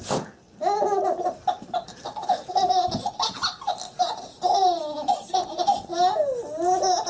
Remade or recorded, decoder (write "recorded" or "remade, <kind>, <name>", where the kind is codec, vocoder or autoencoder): recorded